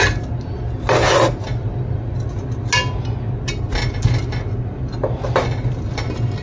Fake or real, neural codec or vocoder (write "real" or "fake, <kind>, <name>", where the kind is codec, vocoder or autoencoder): real